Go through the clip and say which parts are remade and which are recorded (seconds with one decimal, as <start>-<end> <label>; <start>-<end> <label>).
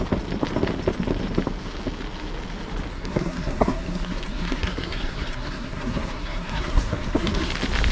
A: 0.0-2.9 recorded; 2.9-7.5 remade; 7.5-7.9 recorded